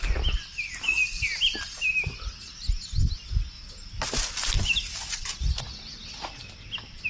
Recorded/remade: recorded